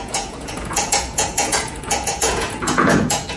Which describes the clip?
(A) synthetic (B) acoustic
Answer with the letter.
A